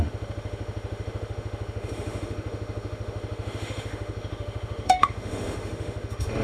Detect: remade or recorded remade